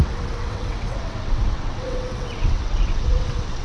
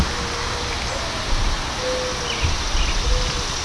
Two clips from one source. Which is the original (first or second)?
second